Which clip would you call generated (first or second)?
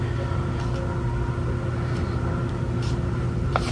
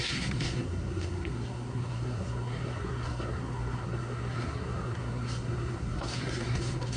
second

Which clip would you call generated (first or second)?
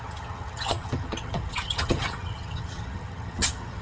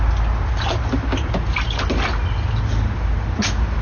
first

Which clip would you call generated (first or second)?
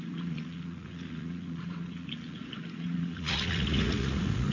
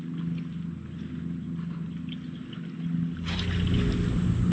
first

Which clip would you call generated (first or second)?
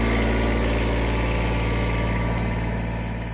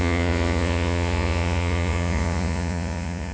second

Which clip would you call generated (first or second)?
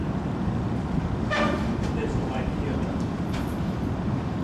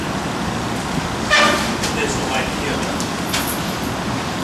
first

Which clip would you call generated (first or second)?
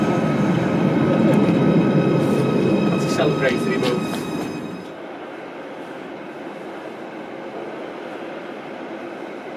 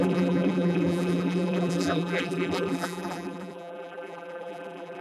second